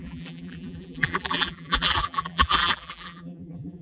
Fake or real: fake